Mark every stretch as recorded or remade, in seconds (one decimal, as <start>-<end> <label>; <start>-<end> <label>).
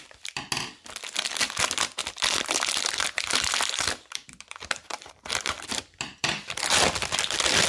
0.0-2.0 recorded; 2.0-6.6 remade; 6.6-7.7 recorded